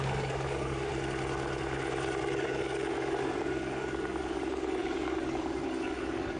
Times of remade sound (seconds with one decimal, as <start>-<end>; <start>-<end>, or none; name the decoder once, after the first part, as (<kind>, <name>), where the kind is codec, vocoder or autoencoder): 0.0-0.9 (codec, DAC); 2.2-6.4